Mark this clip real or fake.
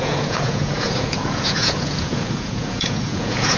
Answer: fake